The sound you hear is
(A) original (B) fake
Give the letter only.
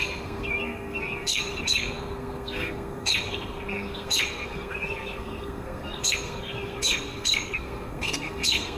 B